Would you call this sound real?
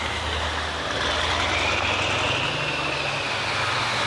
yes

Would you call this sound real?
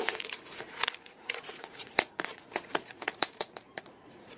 no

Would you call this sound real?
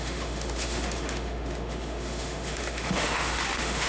no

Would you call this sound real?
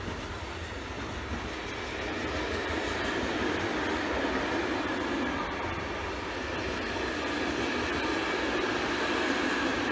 yes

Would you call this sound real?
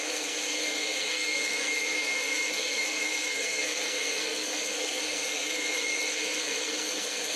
no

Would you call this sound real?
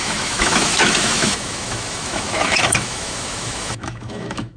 no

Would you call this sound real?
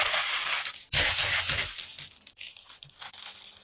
yes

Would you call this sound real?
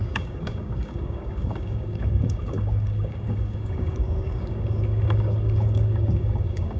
no